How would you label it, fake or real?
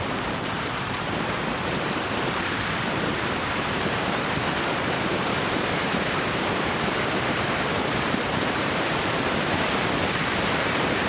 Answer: fake